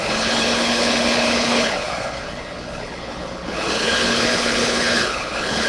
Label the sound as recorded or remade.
remade